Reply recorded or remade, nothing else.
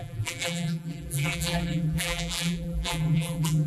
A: remade